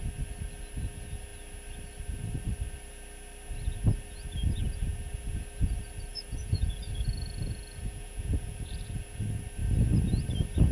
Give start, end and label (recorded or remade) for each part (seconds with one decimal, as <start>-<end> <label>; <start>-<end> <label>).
0.0-6.1 recorded; 6.1-9.2 remade; 9.2-10.7 recorded